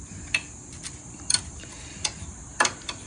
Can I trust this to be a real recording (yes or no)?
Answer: no